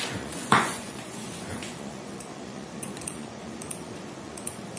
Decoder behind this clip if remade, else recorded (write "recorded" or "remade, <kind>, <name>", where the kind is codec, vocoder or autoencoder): remade, vocoder, Vocos